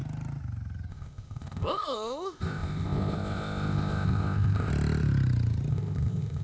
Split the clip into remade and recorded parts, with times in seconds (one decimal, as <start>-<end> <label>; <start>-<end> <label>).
0.0-0.9 recorded; 0.9-4.7 remade; 4.7-5.7 recorded; 5.7-6.4 remade

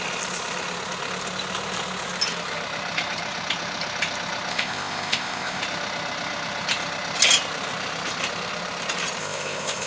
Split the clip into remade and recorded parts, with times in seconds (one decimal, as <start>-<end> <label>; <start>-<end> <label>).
0.0-4.5 recorded; 4.5-5.6 remade; 5.6-9.2 recorded; 9.2-9.9 remade

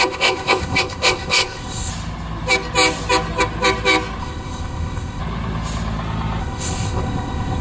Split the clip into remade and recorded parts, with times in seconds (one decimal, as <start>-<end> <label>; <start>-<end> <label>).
0.0-1.9 remade; 1.9-4.2 recorded; 4.2-5.2 remade; 5.2-6.4 recorded; 6.4-7.6 remade

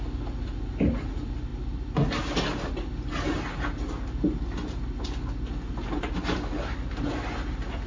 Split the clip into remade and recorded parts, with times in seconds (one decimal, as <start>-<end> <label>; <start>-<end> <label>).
0.0-7.9 recorded

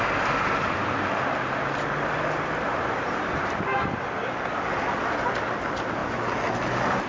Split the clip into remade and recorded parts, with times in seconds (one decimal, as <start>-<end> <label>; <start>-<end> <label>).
0.0-7.1 recorded

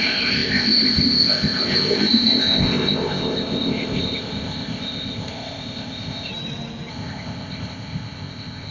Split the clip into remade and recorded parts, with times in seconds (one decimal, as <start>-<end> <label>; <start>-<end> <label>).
0.0-6.3 remade; 6.3-6.9 recorded; 6.9-8.7 remade

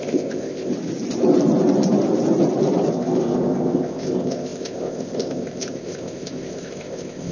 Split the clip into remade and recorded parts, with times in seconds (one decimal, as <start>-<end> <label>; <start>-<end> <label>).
0.0-0.7 remade; 0.7-2.9 recorded; 2.9-7.3 remade